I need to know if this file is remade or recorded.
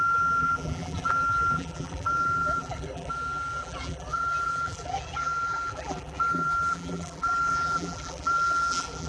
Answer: remade